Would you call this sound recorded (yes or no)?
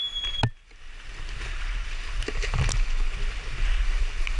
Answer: yes